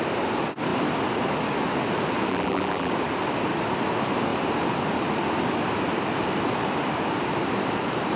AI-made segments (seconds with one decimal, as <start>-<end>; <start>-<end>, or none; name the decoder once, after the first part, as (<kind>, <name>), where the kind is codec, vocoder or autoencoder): 2.3-2.9 (vocoder, BigVGAN v2)